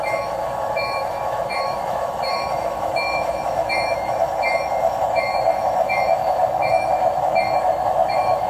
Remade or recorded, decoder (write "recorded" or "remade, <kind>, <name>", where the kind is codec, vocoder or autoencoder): remade, autoencoder, DAC-VAE